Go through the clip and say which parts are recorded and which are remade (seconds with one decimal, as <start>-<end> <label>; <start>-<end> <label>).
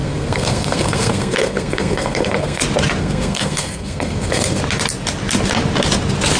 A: 0.0-2.6 remade; 2.6-3.0 recorded; 3.0-4.6 remade; 4.6-6.4 recorded